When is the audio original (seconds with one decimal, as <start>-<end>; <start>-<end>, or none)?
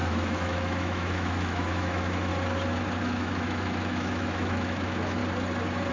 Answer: 2.3-3.0; 5.2-5.9